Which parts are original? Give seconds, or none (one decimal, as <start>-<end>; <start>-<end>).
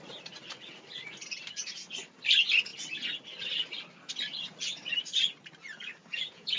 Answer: 0.0-6.0